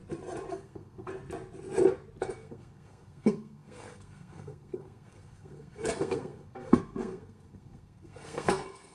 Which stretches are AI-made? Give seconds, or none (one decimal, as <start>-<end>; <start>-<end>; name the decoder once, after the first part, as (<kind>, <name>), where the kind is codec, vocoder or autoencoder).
0.5-1.1 (codec, SNAC); 2.2-8.9